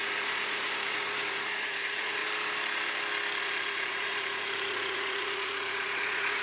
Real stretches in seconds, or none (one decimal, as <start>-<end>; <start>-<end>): 2.2-3.4